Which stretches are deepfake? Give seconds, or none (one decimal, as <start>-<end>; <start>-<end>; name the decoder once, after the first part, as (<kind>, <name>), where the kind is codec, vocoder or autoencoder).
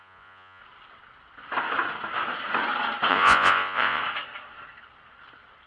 0.0-0.6 (vocoder, Vocos); 3.1-4.0